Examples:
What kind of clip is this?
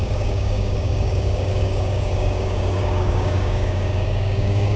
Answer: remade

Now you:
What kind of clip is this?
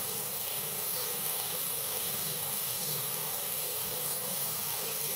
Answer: remade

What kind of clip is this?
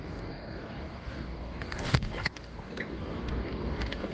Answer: remade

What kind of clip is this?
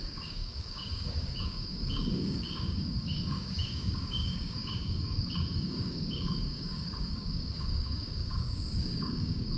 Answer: remade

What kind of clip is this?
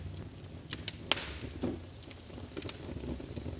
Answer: recorded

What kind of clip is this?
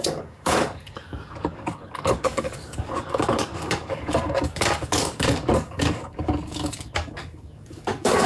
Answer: remade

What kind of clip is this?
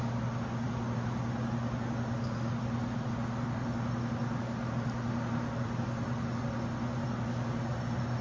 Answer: recorded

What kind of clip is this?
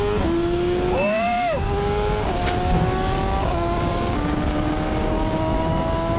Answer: remade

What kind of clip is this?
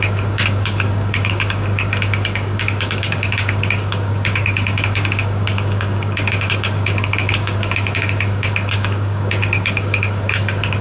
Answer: remade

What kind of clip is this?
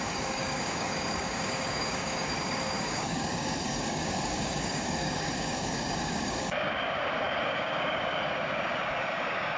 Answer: remade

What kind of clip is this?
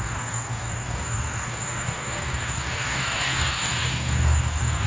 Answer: remade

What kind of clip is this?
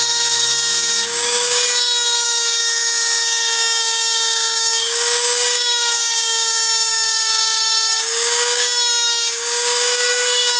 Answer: remade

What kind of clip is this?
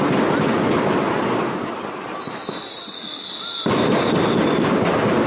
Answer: recorded